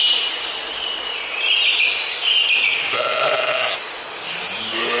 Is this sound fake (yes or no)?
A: no